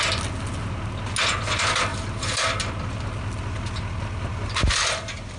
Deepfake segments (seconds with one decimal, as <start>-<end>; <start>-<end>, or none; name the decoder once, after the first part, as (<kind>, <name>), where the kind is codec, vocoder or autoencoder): none